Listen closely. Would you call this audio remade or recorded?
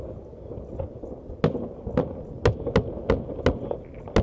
recorded